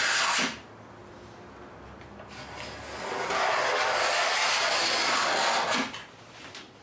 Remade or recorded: recorded